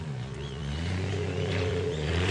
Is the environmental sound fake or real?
fake